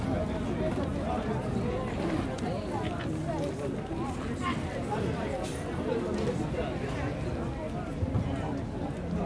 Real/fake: real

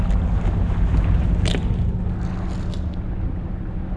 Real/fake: real